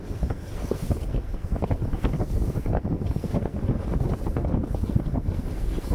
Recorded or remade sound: remade